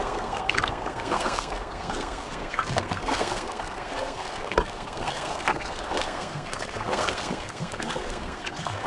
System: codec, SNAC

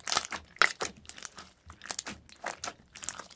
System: none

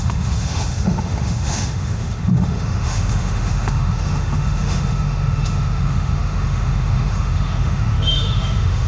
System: autoencoder, DAC-VAE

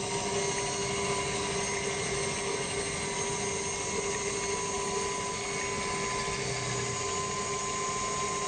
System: none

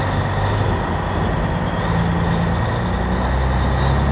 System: none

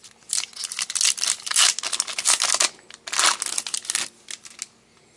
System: none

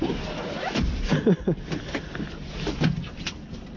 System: none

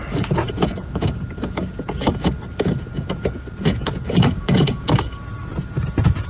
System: vocoder, Vocos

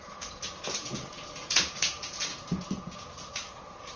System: vocoder, Vocos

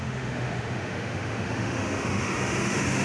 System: autoencoder, DAC-VAE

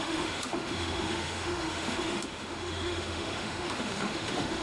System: autoencoder, DAC-VAE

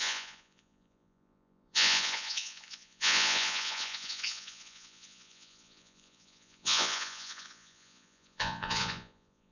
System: vocoder, Vocos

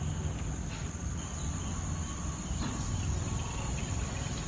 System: none